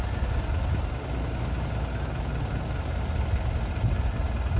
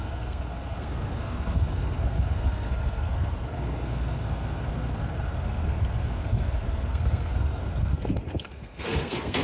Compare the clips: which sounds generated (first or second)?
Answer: second